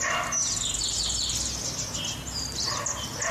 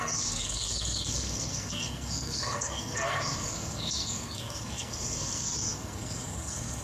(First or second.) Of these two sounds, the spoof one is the second